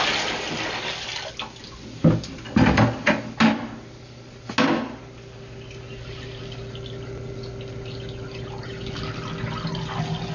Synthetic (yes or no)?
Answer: no